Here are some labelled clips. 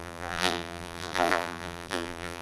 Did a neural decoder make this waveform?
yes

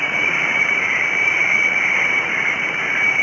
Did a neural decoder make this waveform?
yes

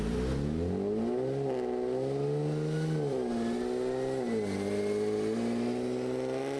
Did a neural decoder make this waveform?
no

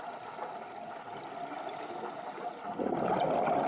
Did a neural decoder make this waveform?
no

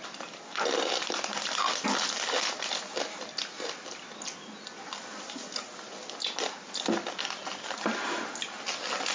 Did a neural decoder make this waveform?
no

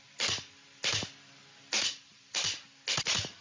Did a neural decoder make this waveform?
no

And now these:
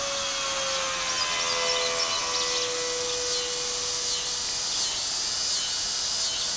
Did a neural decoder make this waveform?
no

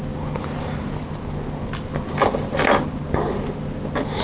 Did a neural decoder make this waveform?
no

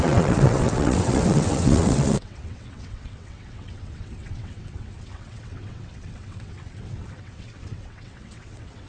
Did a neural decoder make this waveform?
yes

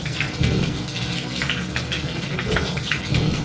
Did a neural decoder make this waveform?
yes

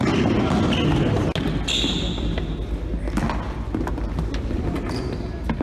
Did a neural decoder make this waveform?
no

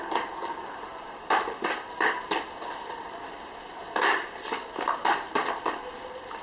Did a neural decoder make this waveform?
yes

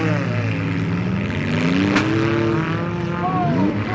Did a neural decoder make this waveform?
no